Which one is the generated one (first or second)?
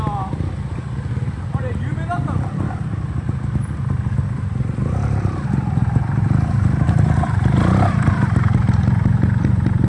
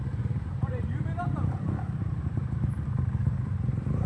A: second